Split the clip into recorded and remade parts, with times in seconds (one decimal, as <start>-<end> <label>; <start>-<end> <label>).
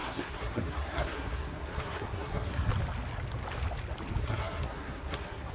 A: 0.0-2.7 remade; 2.7-4.2 recorded; 4.2-5.5 remade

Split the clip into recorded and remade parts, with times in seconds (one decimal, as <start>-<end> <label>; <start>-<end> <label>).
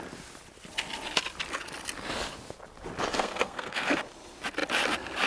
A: 0.0-3.1 recorded; 3.1-4.0 remade; 4.0-5.3 recorded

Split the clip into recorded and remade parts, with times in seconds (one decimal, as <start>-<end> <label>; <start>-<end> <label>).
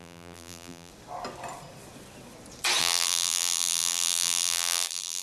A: 0.0-0.9 remade; 0.9-2.8 recorded; 2.8-5.2 remade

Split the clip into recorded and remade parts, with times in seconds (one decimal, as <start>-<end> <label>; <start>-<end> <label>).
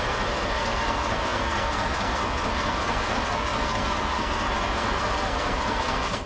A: 0.0-6.3 remade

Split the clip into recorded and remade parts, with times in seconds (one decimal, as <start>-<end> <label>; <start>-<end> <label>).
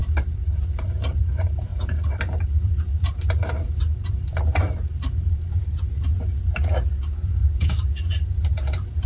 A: 0.0-6.1 remade; 6.1-6.9 recorded; 6.9-9.1 remade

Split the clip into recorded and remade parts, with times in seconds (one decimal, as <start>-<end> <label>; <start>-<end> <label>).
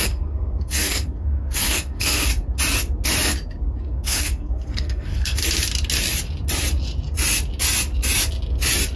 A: 0.0-2.3 remade; 2.3-3.8 recorded; 3.8-5.4 remade; 5.4-9.0 recorded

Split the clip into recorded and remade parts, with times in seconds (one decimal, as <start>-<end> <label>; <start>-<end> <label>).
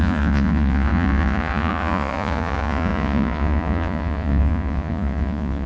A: 0.0-5.7 remade